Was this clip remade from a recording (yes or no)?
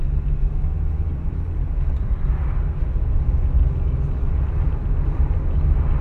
no